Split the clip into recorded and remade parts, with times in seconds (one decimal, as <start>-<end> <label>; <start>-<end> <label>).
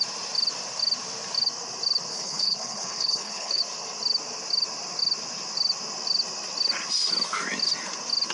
0.0-2.1 recorded; 2.1-3.6 remade; 3.6-8.3 recorded